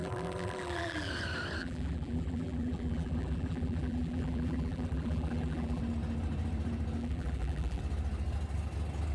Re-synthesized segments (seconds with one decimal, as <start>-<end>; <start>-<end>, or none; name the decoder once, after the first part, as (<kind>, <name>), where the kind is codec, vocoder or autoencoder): 0.0-1.1 (vocoder, BigVGAN v2); 1.6-5.8; 7.0-7.8